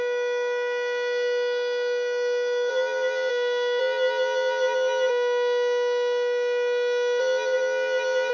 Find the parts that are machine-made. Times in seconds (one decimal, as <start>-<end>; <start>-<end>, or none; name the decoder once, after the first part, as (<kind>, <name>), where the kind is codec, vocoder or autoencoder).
2.7-3.3 (vocoder, Vocos); 3.8-5.1; 7.2-8.3